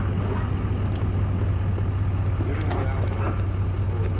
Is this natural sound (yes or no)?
yes